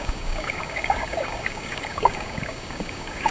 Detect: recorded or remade remade